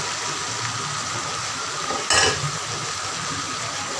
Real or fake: real